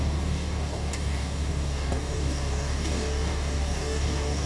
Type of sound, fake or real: fake